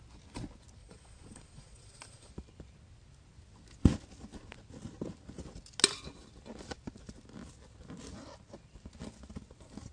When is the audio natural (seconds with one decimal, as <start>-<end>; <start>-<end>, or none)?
0.0-0.8; 2.3-9.9